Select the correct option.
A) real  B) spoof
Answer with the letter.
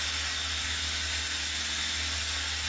A